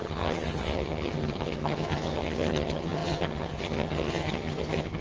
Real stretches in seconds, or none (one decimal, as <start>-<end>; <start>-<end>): none